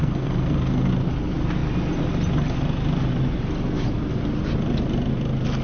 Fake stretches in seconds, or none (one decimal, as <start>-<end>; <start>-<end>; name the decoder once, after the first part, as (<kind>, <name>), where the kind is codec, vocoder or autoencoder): 0.0-0.9 (codec, SNAC)